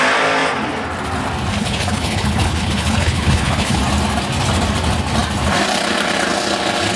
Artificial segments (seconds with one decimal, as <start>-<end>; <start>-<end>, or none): 1.5-3.8